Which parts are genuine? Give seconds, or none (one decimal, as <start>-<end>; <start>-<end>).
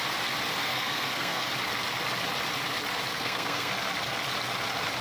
0.0-0.6; 1.5-3.1; 3.7-5.0